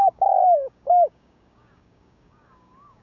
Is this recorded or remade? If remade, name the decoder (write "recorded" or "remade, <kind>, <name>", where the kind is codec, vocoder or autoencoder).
remade, codec, DAC